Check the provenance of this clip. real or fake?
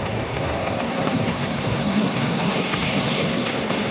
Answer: fake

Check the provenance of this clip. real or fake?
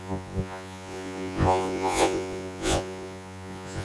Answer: fake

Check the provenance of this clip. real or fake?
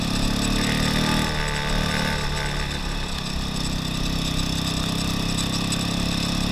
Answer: real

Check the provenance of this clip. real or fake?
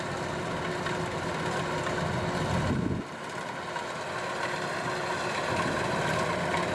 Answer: real